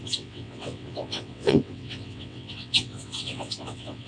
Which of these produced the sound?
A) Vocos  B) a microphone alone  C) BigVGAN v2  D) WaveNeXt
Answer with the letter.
D